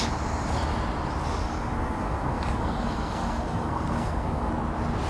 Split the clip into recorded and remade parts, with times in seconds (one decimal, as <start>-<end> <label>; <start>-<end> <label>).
0.0-1.4 recorded; 1.4-4.5 remade; 4.5-5.1 recorded